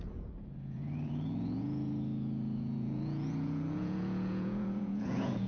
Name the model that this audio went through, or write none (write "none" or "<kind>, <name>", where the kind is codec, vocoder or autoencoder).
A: vocoder, Vocos